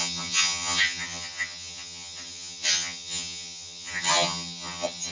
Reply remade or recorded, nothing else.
remade